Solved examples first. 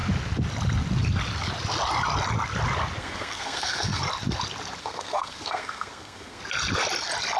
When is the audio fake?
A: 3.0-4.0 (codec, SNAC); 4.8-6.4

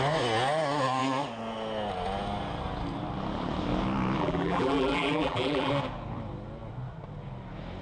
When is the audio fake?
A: 4.2-5.7 (vocoder, BigVGAN v2)

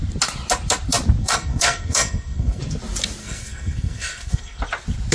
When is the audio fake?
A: 1.2-2.6 (codec, SNAC); 3.2-4.6

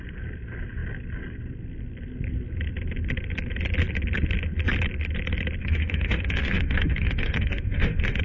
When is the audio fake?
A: 5.6-8.2 (autoencoder, DAC-VAE)

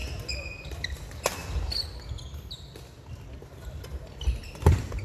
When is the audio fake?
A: none

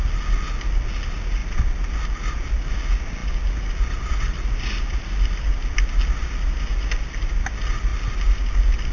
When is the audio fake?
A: none

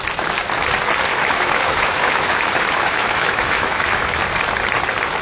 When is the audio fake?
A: 1.1-4.2 (autoencoder, DAC-VAE)